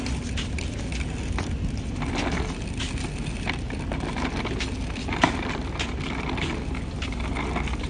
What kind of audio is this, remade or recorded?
recorded